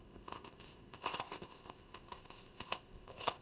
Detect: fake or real fake